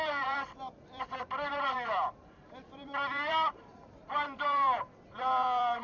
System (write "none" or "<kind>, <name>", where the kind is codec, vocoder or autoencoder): vocoder, BigVGAN v2